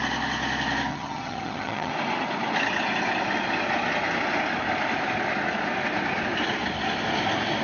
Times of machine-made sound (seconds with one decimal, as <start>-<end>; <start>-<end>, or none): 0.9-1.9